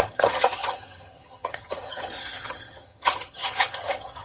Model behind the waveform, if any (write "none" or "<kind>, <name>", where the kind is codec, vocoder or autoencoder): vocoder, HiFi-GAN